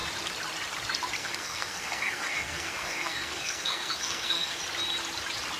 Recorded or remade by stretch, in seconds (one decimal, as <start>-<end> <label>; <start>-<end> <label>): 0.0-1.2 recorded; 1.2-4.6 remade; 4.6-5.6 recorded